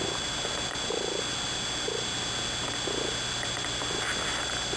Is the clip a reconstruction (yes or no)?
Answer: no